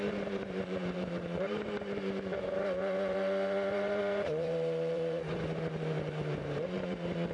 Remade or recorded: remade